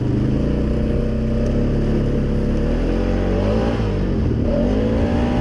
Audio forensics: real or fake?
real